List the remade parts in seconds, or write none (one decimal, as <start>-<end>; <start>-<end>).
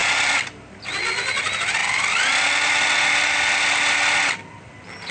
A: none